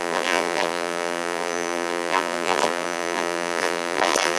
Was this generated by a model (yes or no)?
yes